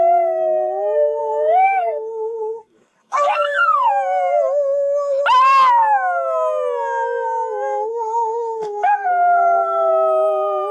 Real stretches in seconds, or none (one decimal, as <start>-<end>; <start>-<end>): 0.0-1.2; 3.9-7.9; 9.9-10.7